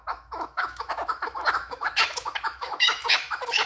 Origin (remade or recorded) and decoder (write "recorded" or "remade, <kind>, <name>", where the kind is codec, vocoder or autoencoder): remade, autoencoder, DAC-VAE